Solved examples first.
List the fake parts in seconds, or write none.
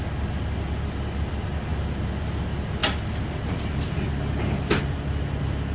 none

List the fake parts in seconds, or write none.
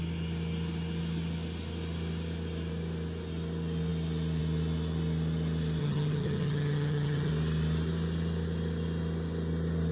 5.8-7.3 (vocoder, HiFi-GAN)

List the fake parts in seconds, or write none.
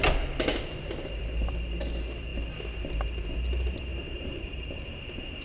3.9-4.6 (vocoder, BigVGAN v2)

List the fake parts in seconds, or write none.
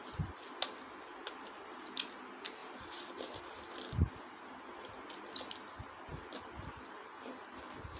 none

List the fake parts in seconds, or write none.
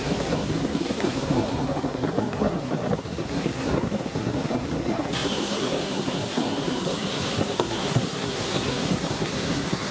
0.0-9.9 (codec, SNAC)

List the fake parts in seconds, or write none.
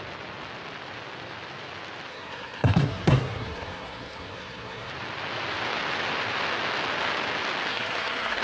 2.1-4.9 (codec, SNAC); 7.7-8.4